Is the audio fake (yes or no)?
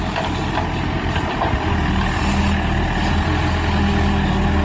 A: no